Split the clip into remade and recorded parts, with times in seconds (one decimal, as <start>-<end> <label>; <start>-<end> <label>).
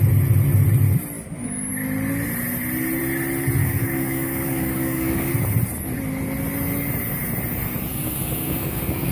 0.0-3.6 recorded; 3.6-5.3 remade; 5.3-7.9 recorded; 7.9-9.1 remade